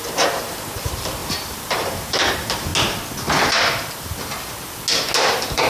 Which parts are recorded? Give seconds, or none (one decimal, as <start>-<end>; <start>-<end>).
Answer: 2.7-5.3